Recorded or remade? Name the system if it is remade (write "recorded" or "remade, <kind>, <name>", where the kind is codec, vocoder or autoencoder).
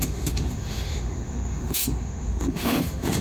remade, autoencoder, DAC-VAE